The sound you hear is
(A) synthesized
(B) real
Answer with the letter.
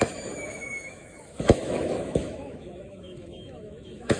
A